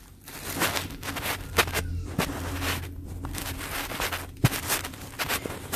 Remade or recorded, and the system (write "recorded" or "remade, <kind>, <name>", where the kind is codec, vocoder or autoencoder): remade, vocoder, BigVGAN v2